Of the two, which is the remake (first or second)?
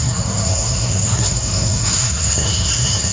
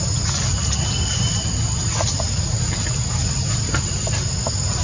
first